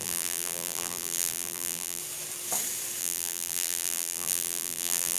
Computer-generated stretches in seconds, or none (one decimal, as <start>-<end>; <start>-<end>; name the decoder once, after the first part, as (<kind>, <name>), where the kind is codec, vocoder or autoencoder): 0.0-2.0 (vocoder, BigVGAN v2); 3.0-5.2